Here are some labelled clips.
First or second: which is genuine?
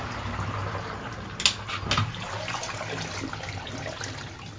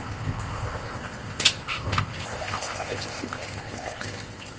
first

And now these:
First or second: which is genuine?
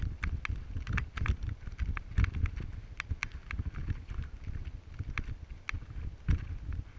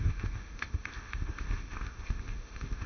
first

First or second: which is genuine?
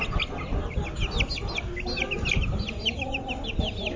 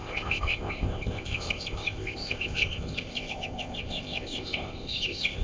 first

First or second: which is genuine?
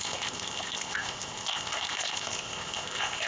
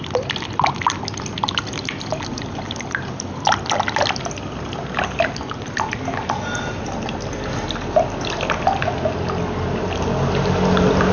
second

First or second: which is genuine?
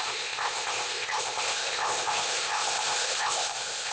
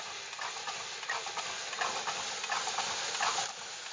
second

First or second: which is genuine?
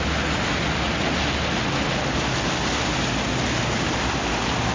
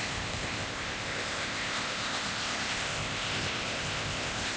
first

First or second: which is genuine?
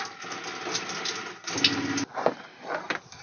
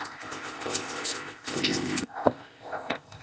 first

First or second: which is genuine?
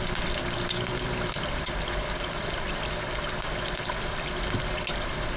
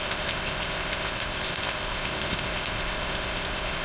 first